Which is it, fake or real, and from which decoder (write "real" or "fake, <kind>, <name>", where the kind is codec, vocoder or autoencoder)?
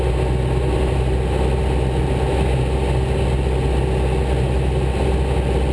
real